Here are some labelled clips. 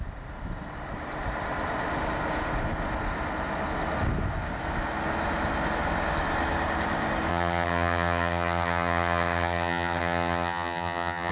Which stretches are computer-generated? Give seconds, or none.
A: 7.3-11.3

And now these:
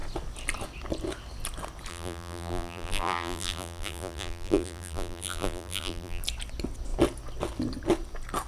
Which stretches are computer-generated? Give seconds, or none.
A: 1.9-6.2

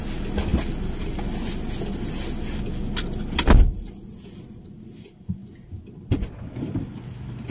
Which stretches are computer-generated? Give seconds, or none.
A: none

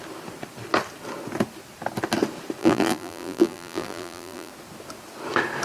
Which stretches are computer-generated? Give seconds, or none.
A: 2.6-4.5

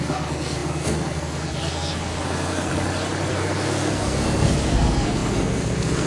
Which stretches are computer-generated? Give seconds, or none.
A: 0.0-2.7; 3.3-6.1

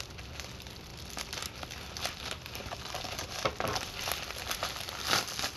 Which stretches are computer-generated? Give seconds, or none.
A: none

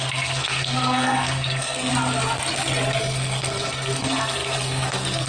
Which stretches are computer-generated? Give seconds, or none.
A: 0.0-1.9; 3.0-5.3

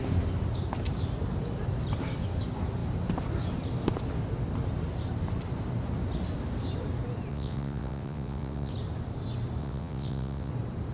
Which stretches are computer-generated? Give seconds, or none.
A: 7.3-8.7; 9.6-10.5